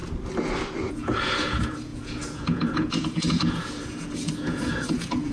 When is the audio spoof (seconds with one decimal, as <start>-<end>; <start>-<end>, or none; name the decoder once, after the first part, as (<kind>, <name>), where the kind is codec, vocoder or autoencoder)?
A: 0.9-5.3 (vocoder, Vocos)